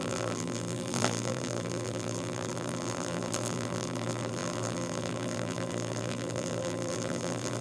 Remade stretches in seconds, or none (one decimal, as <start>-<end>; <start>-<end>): 0.0-7.6